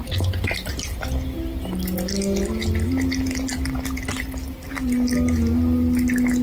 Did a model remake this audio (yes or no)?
no